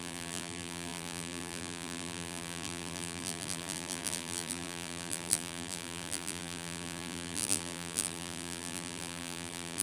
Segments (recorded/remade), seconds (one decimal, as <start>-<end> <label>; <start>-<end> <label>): 0.0-9.8 remade

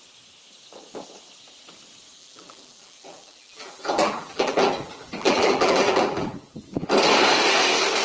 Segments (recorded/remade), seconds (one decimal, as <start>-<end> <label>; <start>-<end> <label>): 0.0-2.2 recorded; 2.2-6.9 remade; 6.9-8.0 recorded